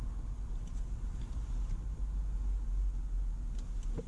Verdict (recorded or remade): recorded